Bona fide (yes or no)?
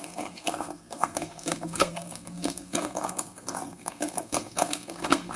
no